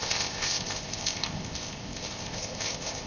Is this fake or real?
fake